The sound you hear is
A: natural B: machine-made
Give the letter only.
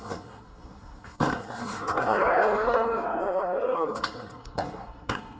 B